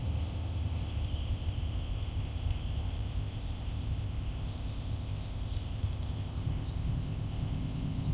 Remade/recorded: remade